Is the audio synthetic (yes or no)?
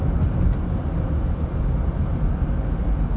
no